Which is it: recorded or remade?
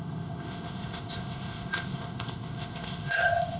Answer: remade